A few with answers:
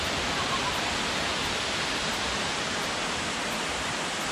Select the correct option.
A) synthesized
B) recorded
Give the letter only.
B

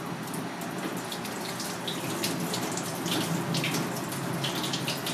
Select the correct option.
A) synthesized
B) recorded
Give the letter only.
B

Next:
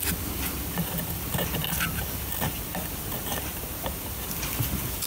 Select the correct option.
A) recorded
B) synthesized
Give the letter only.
A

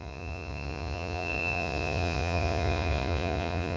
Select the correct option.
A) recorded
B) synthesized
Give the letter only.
B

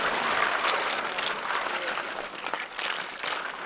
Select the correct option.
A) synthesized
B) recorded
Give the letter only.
B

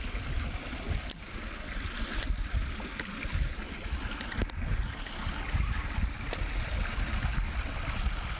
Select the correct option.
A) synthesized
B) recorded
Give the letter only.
B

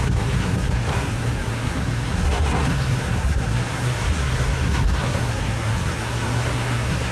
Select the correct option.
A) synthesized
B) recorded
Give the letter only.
A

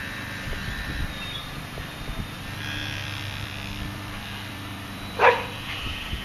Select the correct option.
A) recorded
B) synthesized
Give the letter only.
B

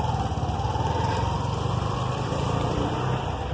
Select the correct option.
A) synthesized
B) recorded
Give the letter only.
B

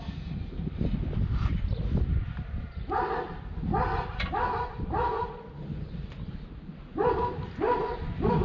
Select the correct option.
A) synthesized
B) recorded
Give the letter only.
B